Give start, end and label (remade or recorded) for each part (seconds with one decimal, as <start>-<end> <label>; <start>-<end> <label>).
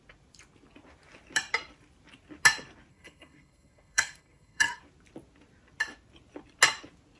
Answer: 0.0-2.9 recorded; 2.9-4.8 remade; 4.8-7.2 recorded